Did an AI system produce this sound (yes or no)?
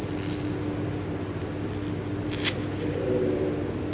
no